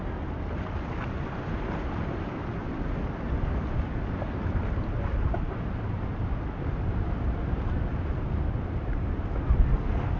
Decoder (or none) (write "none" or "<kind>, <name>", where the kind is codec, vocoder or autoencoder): none